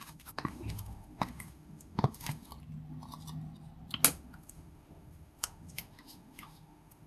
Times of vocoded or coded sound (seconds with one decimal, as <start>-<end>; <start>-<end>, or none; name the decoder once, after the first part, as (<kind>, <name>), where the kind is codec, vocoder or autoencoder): 0.0-2.5 (autoencoder, DAC-VAE); 4.1-7.1